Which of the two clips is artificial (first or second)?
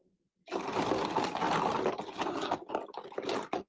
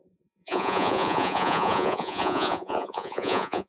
second